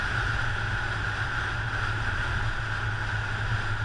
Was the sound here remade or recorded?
recorded